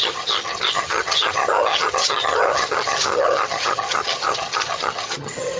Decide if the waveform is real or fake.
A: fake